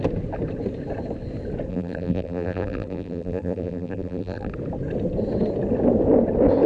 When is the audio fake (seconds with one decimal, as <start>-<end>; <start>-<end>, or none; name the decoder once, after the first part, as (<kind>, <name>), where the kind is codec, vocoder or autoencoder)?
1.7-4.5 (vocoder, BigVGAN v2)